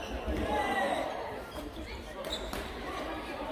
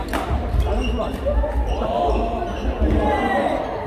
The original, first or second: second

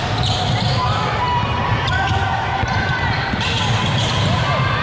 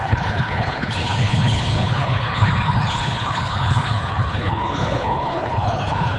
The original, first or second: first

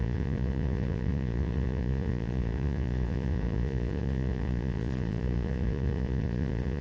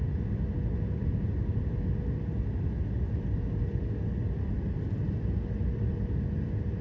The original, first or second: second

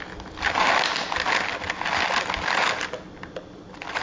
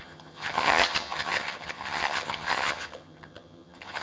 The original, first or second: first